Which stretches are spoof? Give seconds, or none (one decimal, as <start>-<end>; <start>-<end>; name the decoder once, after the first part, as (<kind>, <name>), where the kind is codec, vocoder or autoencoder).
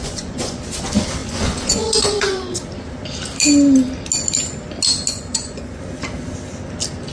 0.0-0.6 (vocoder, Vocos); 1.2-2.6; 5.1-5.8